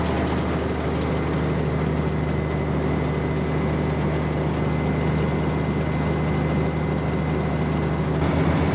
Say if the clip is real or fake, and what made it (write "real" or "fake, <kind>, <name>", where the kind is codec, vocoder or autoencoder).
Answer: real